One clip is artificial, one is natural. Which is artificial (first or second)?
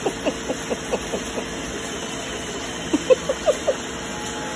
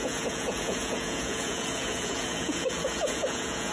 second